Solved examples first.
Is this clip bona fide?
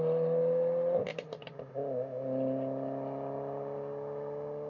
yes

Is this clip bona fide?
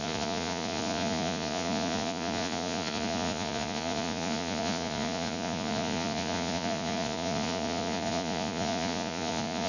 no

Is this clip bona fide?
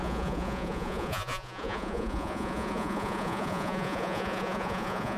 no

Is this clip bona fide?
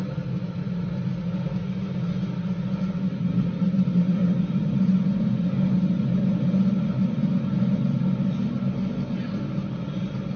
yes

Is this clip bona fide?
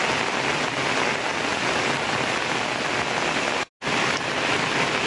yes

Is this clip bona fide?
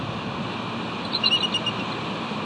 yes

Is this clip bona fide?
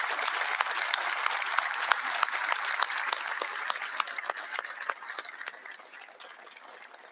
yes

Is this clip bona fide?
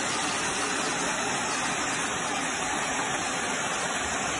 yes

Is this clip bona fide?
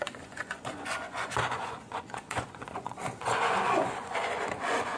no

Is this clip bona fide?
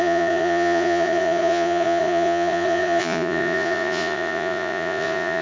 no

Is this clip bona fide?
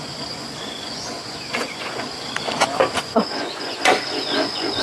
no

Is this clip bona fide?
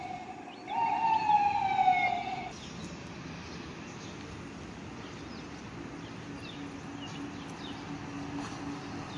yes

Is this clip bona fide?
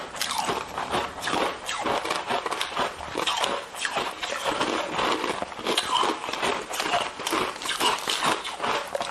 yes